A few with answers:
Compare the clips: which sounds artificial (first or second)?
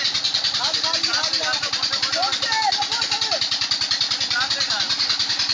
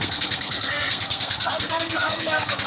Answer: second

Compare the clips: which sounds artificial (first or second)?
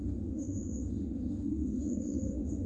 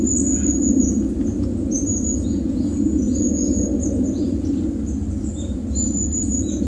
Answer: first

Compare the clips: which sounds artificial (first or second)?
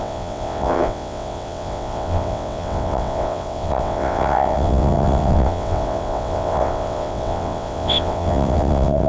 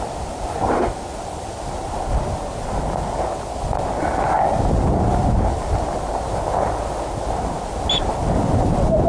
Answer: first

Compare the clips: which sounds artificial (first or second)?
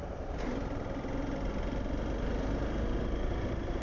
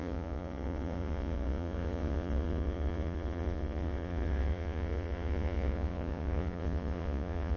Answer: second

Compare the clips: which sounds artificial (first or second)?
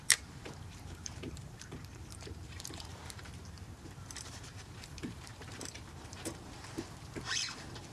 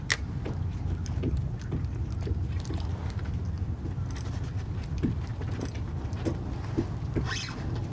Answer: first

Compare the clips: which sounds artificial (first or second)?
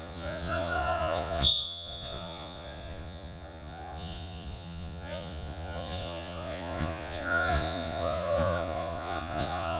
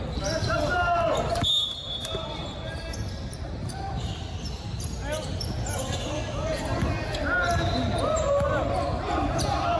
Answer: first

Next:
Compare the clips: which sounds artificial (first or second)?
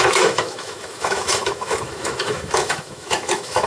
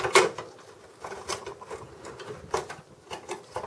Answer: first